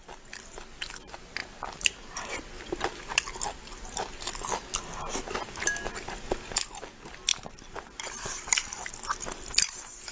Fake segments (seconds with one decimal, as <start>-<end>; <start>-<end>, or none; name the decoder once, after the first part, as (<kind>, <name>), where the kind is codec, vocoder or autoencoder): 1.4-2.3 (vocoder, BigVGAN v2)